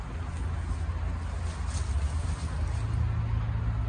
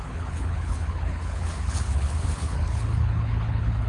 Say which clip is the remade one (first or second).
second